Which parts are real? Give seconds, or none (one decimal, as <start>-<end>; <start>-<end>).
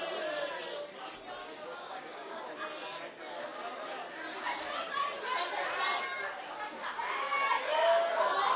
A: 0.0-1.4; 2.4-8.6